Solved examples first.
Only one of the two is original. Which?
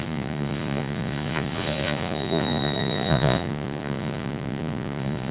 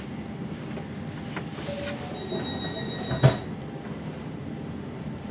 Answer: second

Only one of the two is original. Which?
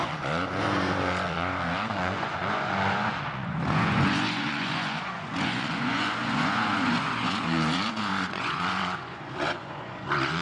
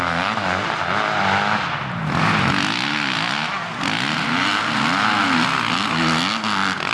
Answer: second